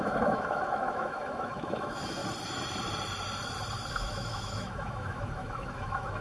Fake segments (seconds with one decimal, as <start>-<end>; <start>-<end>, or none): 0.0-2.2; 3.9-6.2